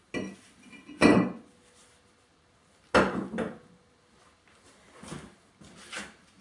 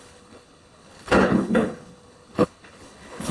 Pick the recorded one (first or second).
first